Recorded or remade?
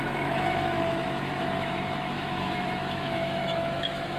remade